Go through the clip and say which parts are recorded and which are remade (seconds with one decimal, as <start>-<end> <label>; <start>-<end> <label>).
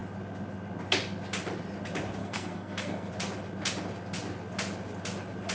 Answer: 0.0-2.2 recorded; 2.2-3.1 remade; 3.1-5.5 recorded